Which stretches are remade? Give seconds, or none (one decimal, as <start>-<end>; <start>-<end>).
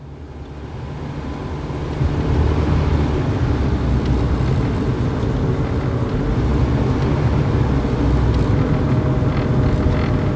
none